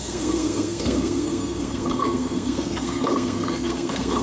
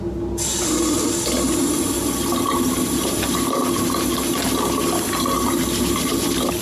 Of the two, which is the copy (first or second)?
first